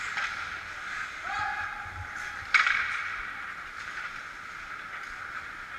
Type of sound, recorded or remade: recorded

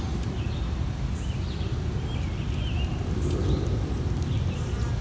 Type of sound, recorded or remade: recorded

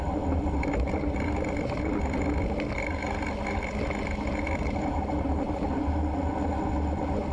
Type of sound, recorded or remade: recorded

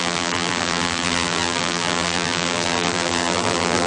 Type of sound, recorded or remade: remade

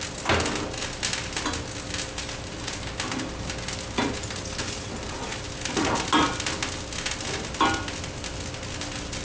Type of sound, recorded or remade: recorded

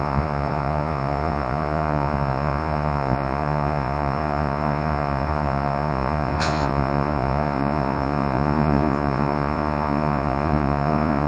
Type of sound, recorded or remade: remade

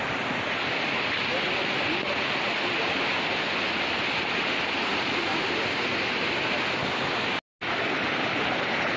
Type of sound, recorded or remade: recorded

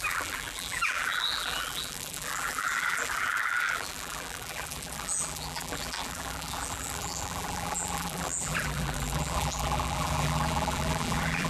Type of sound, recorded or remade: remade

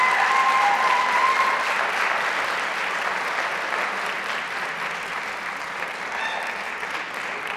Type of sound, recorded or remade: recorded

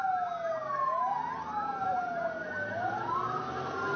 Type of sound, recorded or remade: recorded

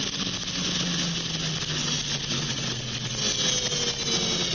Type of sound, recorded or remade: recorded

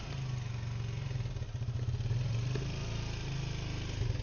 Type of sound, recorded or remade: recorded